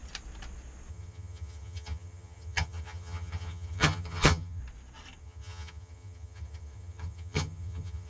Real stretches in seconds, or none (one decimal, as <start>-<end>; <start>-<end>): 0.0-0.9; 4.6-5.2